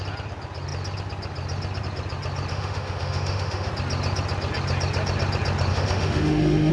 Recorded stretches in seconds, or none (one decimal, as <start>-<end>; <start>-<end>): 0.0-2.5; 3.7-5.7